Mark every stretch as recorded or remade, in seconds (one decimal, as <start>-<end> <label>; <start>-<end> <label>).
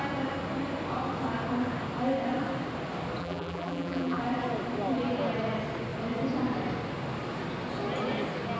0.0-3.2 recorded; 3.2-4.2 remade; 4.2-8.6 recorded